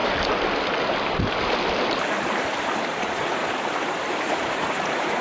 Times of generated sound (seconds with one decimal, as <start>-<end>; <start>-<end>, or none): 2.9-3.4; 4.1-5.2